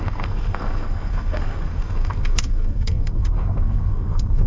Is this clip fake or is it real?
fake